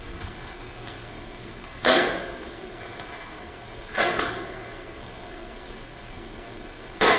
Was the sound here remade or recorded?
remade